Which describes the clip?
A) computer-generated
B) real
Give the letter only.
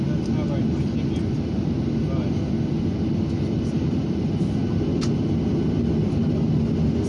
B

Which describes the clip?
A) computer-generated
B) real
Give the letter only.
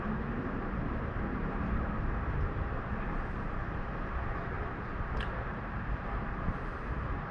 A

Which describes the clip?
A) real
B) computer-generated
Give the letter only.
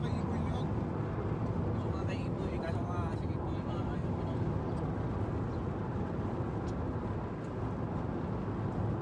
A